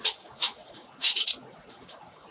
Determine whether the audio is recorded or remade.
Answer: remade